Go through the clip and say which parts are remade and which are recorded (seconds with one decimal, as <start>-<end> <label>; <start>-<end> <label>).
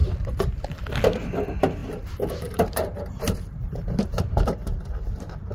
0.0-1.8 recorded; 1.8-5.1 remade; 5.1-5.5 recorded